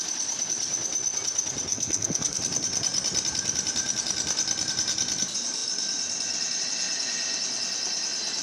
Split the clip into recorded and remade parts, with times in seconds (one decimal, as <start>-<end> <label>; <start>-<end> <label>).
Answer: 0.0-1.7 recorded; 1.7-2.4 remade; 2.4-8.4 recorded